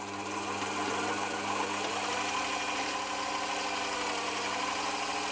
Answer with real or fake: real